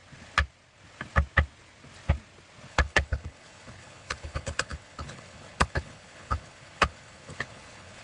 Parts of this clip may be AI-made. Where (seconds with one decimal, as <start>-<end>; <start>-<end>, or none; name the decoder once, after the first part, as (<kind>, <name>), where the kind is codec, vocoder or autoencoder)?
2.7-8.0 (codec, HILCodec)